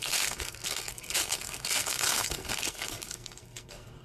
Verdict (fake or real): fake